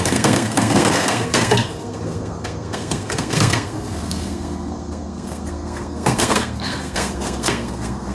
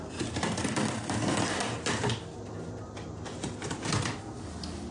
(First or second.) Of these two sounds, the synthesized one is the first